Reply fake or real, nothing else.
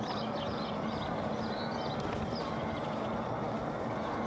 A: real